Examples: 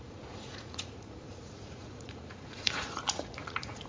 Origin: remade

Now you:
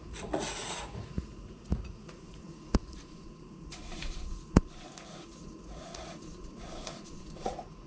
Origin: remade